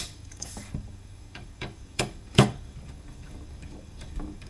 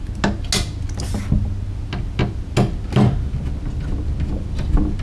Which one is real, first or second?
second